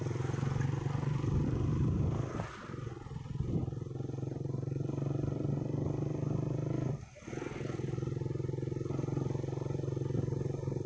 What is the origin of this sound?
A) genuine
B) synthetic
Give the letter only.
A